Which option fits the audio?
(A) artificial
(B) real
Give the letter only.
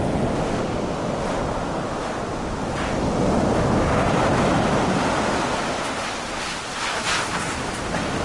B